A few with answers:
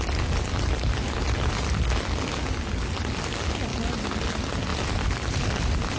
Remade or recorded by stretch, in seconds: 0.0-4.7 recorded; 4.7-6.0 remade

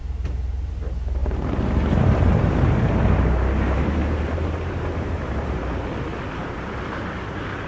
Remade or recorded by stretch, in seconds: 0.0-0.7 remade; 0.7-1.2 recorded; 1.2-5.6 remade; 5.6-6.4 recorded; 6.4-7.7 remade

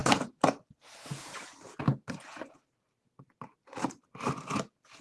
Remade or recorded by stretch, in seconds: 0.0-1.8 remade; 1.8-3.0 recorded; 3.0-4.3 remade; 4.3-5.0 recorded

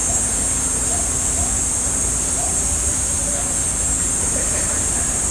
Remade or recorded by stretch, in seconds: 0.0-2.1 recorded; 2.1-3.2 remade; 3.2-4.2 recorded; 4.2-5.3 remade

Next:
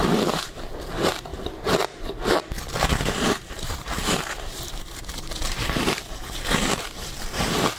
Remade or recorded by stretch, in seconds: 0.0-7.8 remade